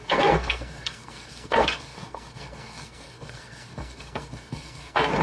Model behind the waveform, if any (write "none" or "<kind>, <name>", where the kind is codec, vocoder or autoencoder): codec, SNAC